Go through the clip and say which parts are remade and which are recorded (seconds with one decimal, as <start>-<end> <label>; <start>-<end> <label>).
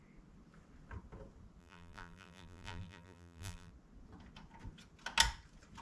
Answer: 0.0-1.6 recorded; 1.6-3.7 remade; 3.7-5.8 recorded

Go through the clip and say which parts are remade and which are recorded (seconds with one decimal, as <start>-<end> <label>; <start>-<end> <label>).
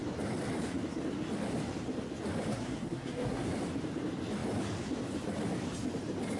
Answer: 0.0-2.5 recorded; 2.5-3.5 remade; 3.5-6.4 recorded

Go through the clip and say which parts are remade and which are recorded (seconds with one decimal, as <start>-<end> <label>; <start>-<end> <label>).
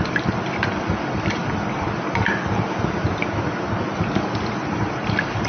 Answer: 0.0-1.4 remade; 1.4-4.7 recorded; 4.7-5.5 remade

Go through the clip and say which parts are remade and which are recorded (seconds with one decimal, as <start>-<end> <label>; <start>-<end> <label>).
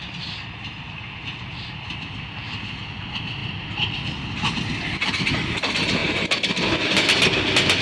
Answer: 0.0-7.8 recorded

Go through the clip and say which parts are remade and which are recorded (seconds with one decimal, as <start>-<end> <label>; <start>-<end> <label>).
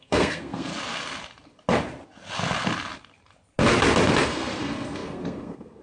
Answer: 0.0-0.7 remade; 0.7-4.2 recorded; 4.2-5.8 remade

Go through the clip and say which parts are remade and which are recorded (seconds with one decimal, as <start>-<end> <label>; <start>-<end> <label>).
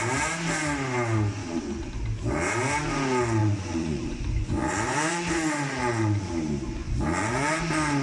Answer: 0.0-1.4 recorded; 1.4-1.9 remade; 1.9-3.4 recorded; 3.4-6.3 remade; 6.3-6.8 recorded; 6.8-7.6 remade; 7.6-8.0 recorded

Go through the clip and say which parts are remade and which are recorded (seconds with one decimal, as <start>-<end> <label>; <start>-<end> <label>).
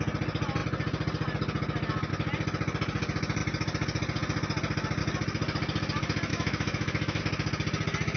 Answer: 0.0-6.3 recorded; 6.3-7.2 remade; 7.2-8.2 recorded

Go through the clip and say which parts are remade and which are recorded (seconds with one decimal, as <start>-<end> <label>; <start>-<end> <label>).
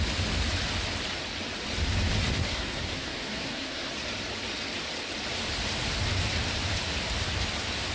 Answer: 0.0-2.4 recorded; 2.4-3.9 remade; 3.9-7.9 recorded